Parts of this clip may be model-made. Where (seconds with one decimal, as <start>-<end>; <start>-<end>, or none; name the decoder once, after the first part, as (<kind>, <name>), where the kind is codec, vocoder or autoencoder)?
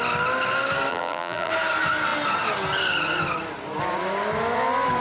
0.9-1.5 (vocoder, BigVGAN v2)